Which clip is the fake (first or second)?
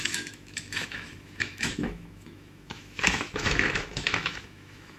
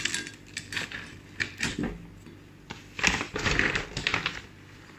first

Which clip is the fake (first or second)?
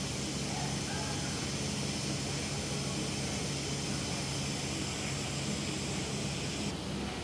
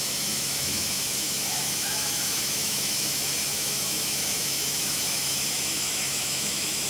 second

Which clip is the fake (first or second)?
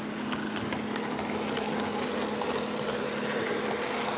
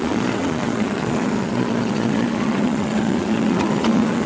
second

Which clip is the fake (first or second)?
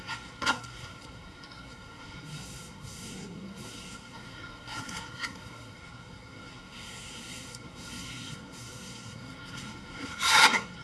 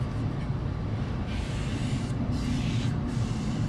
first